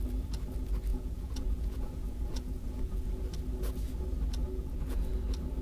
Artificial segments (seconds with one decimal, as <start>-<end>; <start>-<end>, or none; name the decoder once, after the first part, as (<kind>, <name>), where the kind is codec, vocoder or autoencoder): 0.9-3.2 (vocoder, Vocos); 4.4-5.1